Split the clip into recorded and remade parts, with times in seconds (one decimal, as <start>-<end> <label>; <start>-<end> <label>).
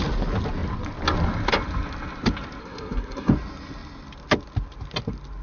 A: 0.0-2.6 recorded; 2.6-3.3 remade; 3.3-5.4 recorded